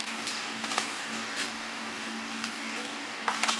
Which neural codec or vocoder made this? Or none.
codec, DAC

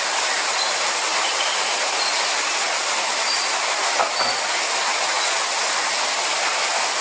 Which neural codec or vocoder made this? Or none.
none